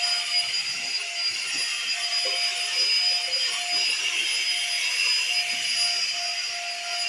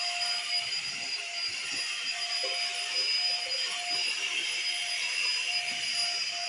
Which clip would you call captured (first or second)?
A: first